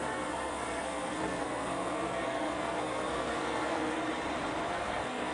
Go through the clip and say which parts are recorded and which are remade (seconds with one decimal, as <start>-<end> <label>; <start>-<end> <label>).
0.0-4.0 remade; 4.0-4.7 recorded; 4.7-5.3 remade